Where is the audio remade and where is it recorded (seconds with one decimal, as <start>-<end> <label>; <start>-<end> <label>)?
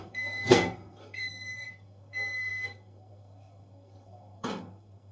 0.0-5.1 remade